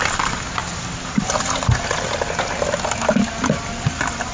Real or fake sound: real